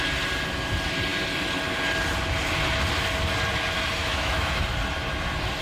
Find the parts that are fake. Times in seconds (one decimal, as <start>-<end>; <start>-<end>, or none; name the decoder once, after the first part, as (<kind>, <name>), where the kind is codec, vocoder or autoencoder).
4.0-4.6 (autoencoder, DAC-VAE)